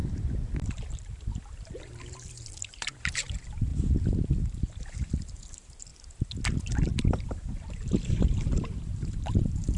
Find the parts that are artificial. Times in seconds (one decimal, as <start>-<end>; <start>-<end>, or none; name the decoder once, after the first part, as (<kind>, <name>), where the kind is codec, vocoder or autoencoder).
0.6-3.7 (vocoder, BigVGAN v2); 4.4-5.9; 6.9-9.8